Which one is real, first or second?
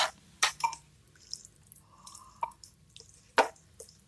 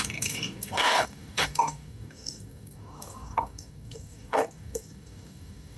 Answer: first